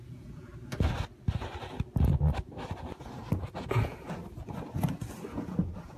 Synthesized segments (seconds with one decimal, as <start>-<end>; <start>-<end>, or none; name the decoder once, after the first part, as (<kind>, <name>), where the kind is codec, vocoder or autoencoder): 0.0-0.5 (vocoder, Vocos); 3.6-4.2; 5.3-6.0